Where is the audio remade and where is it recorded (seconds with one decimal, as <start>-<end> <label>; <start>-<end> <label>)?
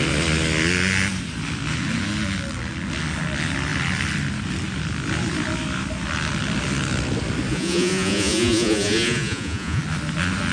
0.0-7.5 recorded; 7.5-9.8 remade; 9.8-10.5 recorded